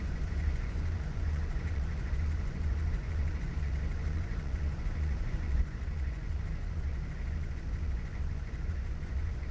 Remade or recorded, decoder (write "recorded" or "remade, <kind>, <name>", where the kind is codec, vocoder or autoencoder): remade, vocoder, Vocos